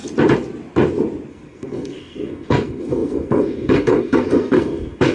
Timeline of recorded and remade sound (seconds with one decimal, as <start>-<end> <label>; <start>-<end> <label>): 0.0-1.3 recorded; 1.3-5.1 remade